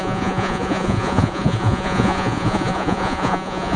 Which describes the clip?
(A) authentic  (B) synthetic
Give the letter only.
B